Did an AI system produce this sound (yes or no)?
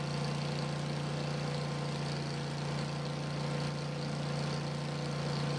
no